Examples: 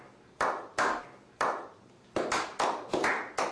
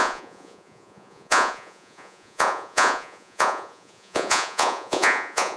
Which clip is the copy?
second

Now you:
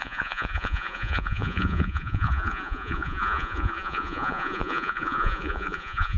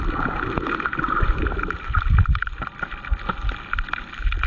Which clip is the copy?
first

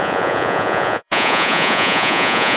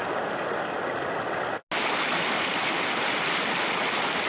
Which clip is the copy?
first